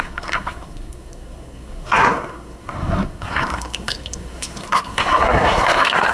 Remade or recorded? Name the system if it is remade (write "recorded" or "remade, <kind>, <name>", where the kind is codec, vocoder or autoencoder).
remade, codec, SNAC